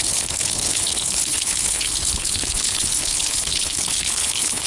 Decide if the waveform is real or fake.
fake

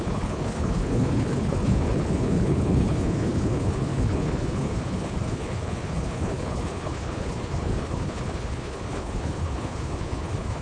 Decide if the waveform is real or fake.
fake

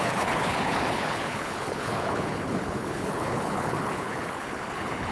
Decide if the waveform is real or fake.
fake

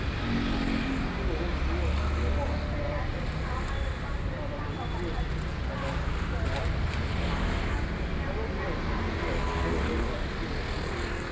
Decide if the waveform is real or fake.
real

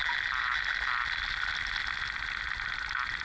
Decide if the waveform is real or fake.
real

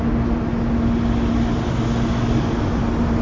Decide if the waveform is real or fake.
real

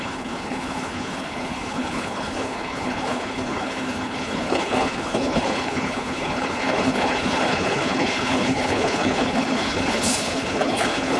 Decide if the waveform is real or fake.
fake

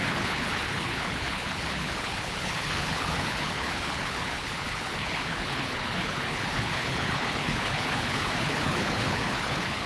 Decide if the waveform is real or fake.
fake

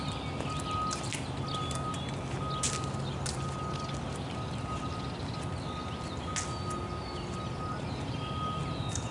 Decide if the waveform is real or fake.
real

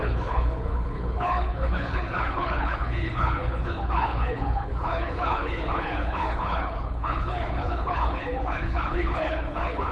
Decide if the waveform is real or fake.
fake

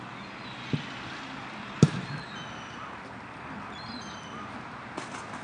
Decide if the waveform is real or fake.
real